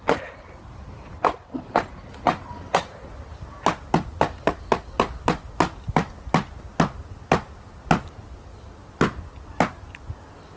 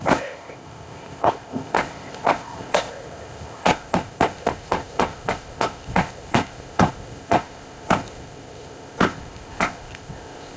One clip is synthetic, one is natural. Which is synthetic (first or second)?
second